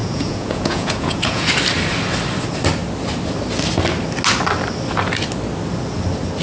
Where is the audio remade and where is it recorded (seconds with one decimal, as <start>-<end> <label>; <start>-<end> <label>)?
0.0-1.5 remade; 1.5-6.4 recorded